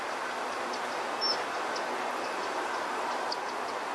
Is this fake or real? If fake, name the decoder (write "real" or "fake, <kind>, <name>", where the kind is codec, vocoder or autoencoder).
real